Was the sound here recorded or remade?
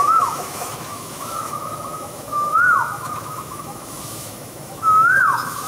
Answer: remade